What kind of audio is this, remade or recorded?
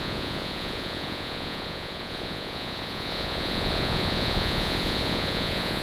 remade